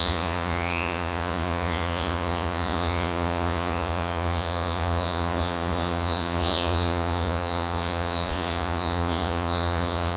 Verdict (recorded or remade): remade